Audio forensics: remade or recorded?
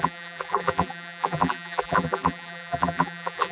remade